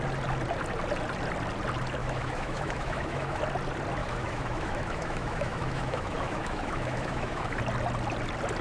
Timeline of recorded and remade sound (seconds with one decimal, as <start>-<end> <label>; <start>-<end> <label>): 0.0-2.0 recorded; 2.0-3.4 remade; 3.4-4.0 recorded; 4.0-7.6 remade; 7.6-8.6 recorded